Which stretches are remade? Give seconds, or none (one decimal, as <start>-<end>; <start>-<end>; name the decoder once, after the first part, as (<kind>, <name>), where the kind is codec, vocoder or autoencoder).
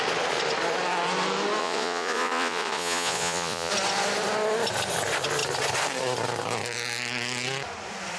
1.6-3.7 (vocoder, Vocos)